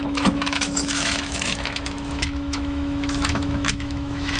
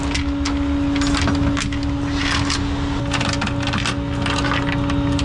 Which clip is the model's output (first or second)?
first